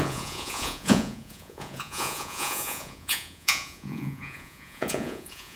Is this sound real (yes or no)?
no